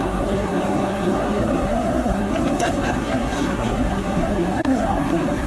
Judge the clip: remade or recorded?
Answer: remade